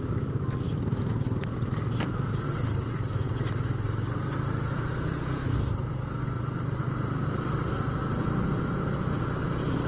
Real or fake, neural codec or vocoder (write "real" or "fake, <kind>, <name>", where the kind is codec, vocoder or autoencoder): real